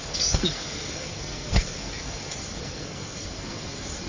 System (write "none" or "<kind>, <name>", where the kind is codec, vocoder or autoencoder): codec, SNAC